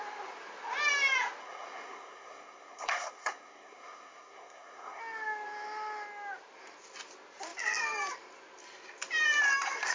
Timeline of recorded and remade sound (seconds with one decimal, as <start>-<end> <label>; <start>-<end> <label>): 0.0-1.4 recorded; 1.4-5.0 remade; 5.0-9.9 recorded